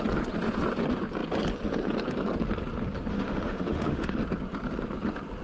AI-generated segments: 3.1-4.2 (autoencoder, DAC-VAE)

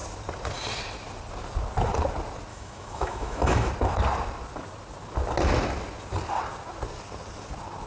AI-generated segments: 2.5-3.7 (autoencoder, DAC-VAE)

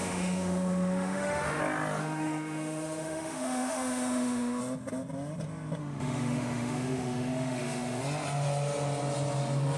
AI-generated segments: 0.0-1.6 (autoencoder, DAC-VAE); 2.0-4.6; 5.8-8.0

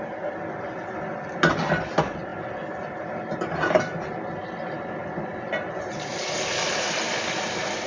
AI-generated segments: none